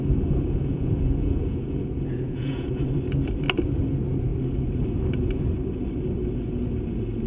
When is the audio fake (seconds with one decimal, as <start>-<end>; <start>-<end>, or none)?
0.0-2.8